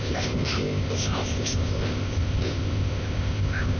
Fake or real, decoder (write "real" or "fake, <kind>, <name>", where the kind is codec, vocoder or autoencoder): fake, codec, ZipCodec